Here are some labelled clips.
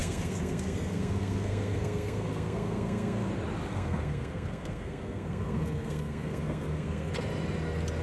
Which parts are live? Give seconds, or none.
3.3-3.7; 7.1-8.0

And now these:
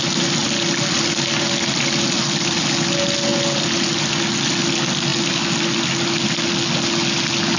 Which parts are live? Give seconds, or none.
0.0-7.6

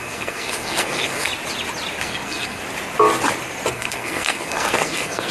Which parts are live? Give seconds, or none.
1.3-2.0; 2.6-3.7

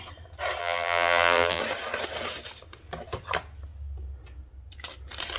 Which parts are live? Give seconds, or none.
0.0-0.6; 1.6-5.4

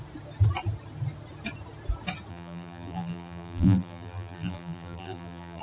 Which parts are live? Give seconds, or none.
0.0-2.3